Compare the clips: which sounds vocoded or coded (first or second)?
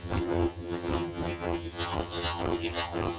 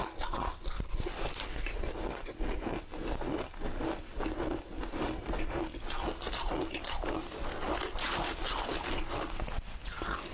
first